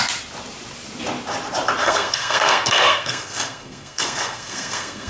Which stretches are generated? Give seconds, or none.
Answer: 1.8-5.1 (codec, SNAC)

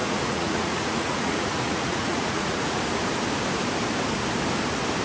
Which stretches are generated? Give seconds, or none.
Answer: 0.0-2.8 (vocoder, Vocos)

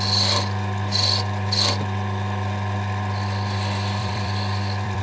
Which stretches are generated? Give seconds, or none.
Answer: 4.0-5.0 (vocoder, BigVGAN v2)